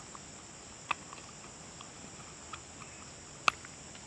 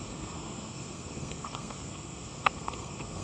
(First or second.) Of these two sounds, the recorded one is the first